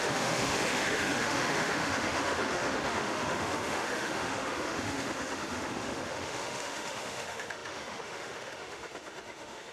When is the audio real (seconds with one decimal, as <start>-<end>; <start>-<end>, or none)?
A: none